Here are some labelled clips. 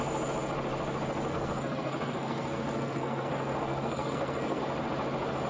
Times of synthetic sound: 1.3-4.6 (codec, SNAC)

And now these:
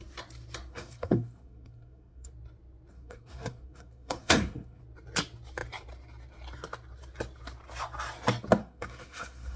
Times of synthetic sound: 0.7-2.3 (codec, SNAC); 2.9-4.8; 8.6-9.6